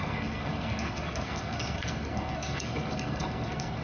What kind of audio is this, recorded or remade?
remade